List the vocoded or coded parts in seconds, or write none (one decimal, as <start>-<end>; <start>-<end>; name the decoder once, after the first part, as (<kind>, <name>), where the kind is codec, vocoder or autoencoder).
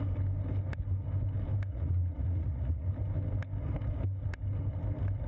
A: 1.7-2.9 (vocoder, Vocos)